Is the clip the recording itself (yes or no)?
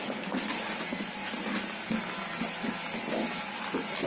yes